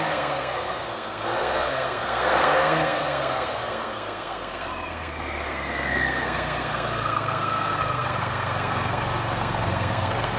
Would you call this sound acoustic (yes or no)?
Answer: no